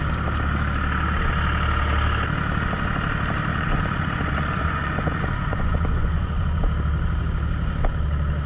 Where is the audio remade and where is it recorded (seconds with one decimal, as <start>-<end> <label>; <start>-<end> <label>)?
0.0-3.5 recorded; 3.5-6.6 remade; 6.6-8.5 recorded